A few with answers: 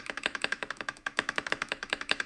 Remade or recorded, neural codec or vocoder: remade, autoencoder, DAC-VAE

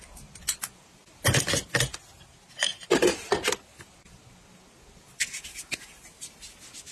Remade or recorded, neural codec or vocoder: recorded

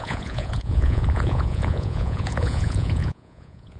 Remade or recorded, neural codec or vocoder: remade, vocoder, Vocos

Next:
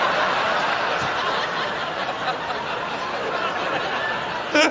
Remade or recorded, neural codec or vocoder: recorded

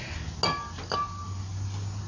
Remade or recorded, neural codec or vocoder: recorded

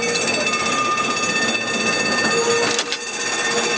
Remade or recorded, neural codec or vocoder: recorded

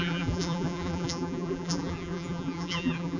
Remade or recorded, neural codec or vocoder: remade, vocoder, BigVGAN v2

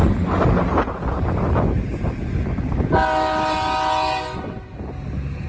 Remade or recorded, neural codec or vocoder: recorded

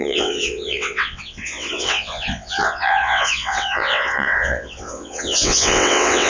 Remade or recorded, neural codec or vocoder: remade, vocoder, WaveNeXt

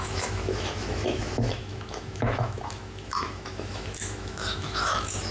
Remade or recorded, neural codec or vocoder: remade, autoencoder, DAC-VAE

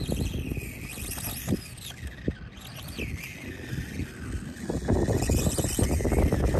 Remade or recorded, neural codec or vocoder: recorded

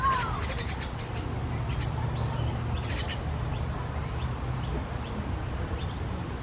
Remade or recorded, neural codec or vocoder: recorded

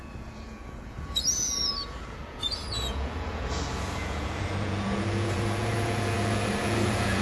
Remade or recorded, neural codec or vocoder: remade, vocoder, Vocos